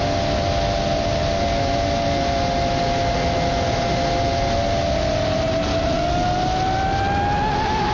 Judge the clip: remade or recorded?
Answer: recorded